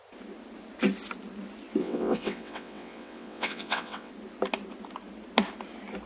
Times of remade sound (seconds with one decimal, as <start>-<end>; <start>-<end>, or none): 1.8-4.1

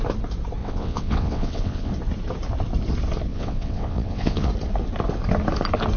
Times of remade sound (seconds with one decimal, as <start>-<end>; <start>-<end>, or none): 0.6-1.9; 3.3-4.5

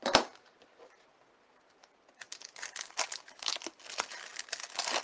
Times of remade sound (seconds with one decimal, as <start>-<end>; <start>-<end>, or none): none

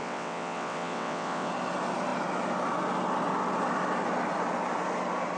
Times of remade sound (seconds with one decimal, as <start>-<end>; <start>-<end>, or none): 0.0-1.5

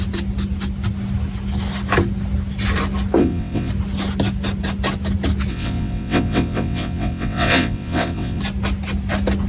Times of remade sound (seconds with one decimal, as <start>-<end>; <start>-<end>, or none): 3.2-3.7; 5.5-8.4

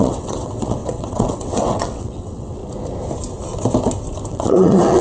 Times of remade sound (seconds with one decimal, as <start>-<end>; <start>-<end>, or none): 0.0-2.6; 4.3-5.0

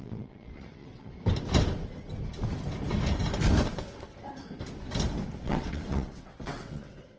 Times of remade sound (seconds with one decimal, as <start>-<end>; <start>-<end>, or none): 0.0-1.1; 5.4-7.2

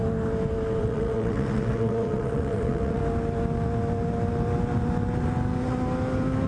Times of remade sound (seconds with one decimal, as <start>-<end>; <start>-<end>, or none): 0.8-3.0